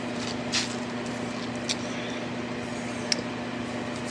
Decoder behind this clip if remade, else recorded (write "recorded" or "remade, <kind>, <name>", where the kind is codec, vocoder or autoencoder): recorded